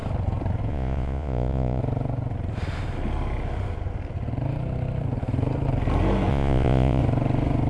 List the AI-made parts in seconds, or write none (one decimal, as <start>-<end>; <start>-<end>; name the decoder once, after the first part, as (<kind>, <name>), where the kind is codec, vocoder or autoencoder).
0.7-1.8 (vocoder, Vocos); 6.3-7.0